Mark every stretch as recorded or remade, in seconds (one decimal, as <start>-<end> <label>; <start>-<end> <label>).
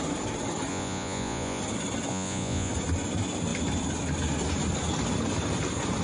0.0-0.7 recorded; 0.7-1.6 remade; 1.6-2.1 recorded; 2.1-2.7 remade; 2.7-6.0 recorded